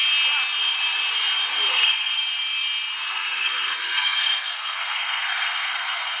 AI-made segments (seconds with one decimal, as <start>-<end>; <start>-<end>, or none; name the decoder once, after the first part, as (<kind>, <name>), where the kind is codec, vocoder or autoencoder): 1.7-2.2 (codec, SNAC); 3.1-6.2